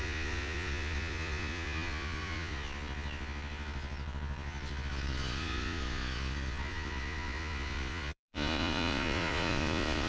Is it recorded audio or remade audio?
remade